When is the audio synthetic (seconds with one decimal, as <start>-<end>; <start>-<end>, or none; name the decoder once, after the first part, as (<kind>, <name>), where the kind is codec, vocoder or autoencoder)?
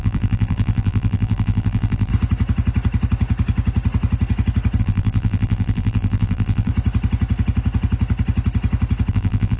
0.0-2.1 (vocoder, BigVGAN v2); 4.8-6.7; 9.1-9.6